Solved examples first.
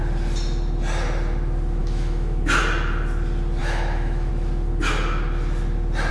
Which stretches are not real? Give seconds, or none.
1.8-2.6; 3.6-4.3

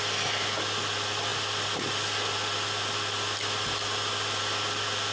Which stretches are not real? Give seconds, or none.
none

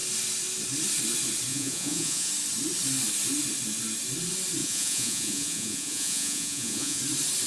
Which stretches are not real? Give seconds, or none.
1.5-2.3; 4.6-7.0

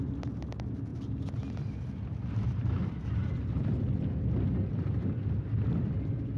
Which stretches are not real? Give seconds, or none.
none

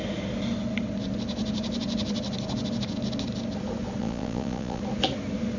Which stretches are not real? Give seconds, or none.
4.0-4.8

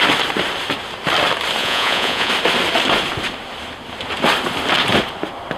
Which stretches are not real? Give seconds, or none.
1.6-2.3